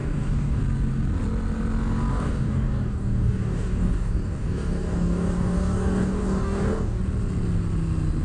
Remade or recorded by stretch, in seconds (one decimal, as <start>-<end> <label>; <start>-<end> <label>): 0.0-0.6 remade; 0.6-2.1 recorded; 2.1-7.0 remade; 7.0-8.2 recorded